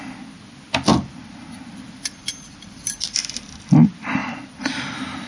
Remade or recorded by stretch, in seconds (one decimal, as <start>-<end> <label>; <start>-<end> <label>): 0.0-0.9 recorded; 0.9-3.6 remade; 3.6-4.2 recorded; 4.2-4.8 remade; 4.8-5.3 recorded